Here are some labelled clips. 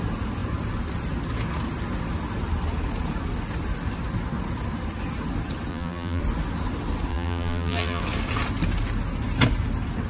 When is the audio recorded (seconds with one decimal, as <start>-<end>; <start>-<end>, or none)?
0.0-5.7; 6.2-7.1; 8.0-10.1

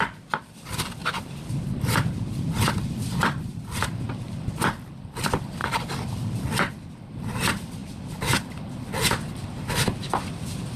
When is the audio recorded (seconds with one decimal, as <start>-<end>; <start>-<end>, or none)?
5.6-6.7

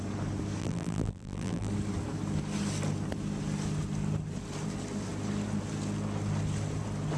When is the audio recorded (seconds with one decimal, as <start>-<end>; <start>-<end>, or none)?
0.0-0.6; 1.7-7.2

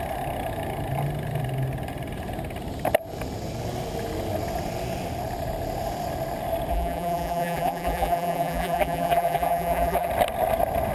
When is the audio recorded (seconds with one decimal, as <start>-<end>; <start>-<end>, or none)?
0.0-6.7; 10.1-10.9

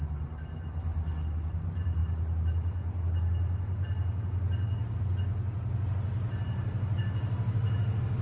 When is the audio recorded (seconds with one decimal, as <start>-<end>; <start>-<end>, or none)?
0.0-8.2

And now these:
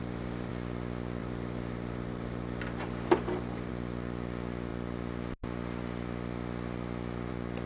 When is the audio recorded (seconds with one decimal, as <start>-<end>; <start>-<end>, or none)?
0.5-1.2; 3.7-7.7